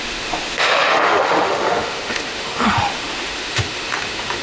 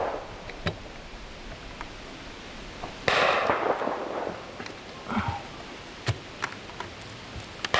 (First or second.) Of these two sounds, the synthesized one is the first